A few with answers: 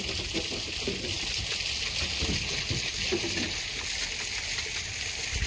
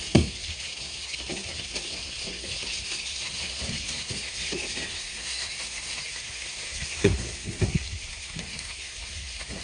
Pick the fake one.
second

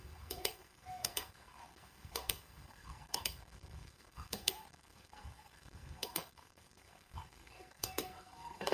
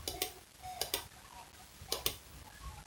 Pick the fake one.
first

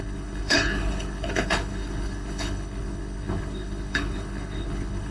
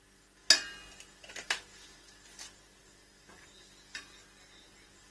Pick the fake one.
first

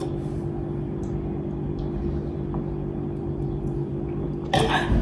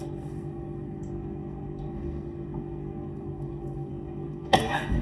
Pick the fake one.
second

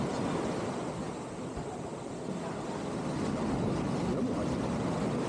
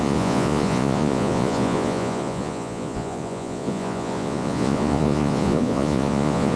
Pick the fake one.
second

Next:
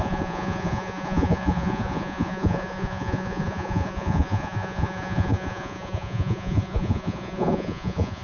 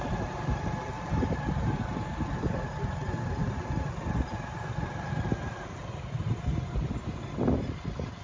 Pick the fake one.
first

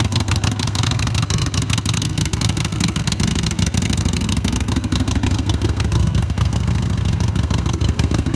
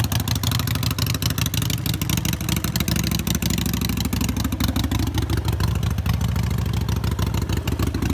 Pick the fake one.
first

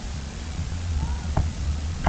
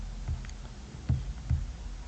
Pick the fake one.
first